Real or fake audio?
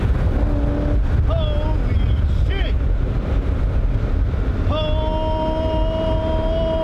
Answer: real